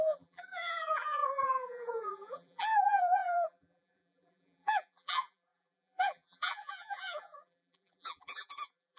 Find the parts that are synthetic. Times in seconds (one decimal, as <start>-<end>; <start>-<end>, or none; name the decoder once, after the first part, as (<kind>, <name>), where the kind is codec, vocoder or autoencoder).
0.0-9.0 (vocoder, BigVGAN v2)